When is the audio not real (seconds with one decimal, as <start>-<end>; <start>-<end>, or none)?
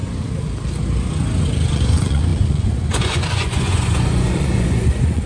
1.7-5.3